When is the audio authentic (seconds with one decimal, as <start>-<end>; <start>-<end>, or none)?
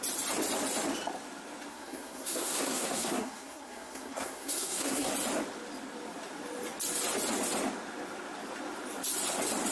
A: 0.0-1.7; 5.1-9.7